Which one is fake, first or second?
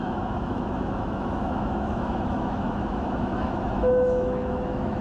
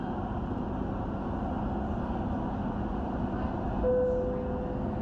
first